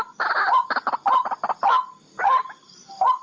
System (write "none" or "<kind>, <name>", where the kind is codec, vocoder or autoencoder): none